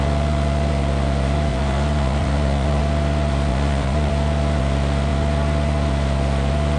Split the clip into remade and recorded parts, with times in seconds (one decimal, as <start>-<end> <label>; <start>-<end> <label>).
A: 0.0-1.5 recorded; 1.5-2.8 remade; 2.8-3.5 recorded; 3.5-4.1 remade; 4.1-6.8 recorded